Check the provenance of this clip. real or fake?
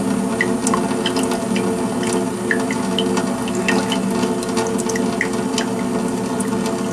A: real